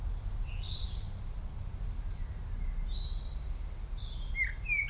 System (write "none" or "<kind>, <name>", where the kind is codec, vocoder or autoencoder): none